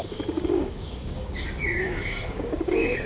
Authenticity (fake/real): fake